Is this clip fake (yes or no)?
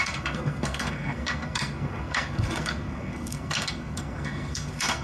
yes